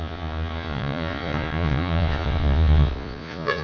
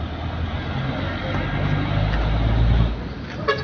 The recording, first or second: second